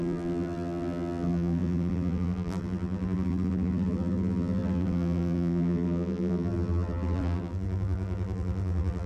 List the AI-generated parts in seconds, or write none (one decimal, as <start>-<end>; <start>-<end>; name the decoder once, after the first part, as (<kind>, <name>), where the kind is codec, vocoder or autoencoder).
0.0-9.1 (vocoder, BigVGAN v2)